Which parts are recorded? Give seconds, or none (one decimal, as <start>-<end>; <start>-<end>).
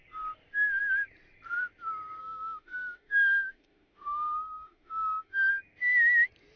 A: 0.0-2.2; 5.5-6.6